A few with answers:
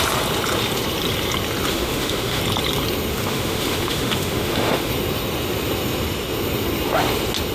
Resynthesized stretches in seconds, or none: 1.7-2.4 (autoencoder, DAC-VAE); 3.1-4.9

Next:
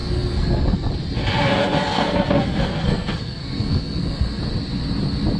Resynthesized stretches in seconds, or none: 0.0-0.9 (codec, SNAC); 1.4-4.4

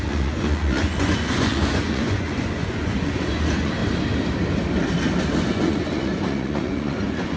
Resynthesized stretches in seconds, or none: 0.0-3.8 (vocoder, Vocos); 5.5-7.4

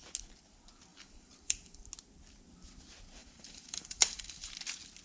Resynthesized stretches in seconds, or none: 0.9-1.8 (vocoder, BigVGAN v2); 3.2-4.5

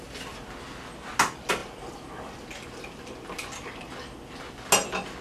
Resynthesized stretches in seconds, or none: none